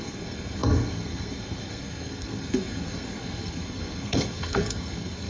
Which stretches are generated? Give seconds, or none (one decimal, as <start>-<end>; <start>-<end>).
0.0-5.3